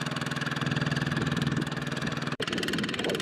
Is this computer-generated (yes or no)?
yes